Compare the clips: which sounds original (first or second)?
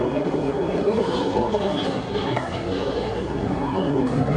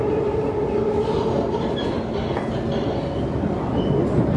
second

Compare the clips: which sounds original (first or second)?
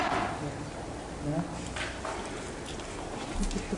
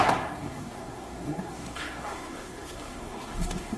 first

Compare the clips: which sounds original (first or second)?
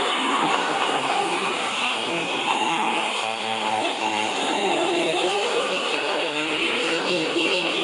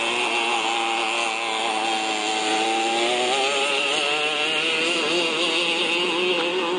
second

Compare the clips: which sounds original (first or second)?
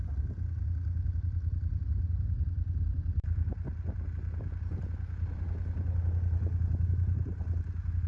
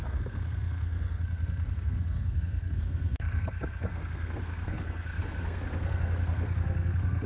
first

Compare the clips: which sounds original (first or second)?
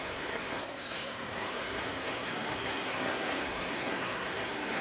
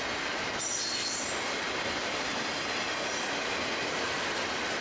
second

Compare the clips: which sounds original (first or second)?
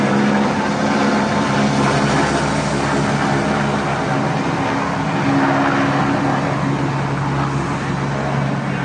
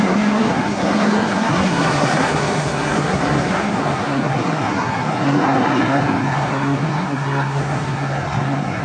first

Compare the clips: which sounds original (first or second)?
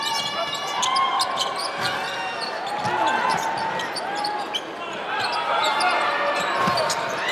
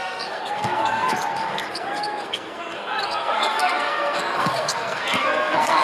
first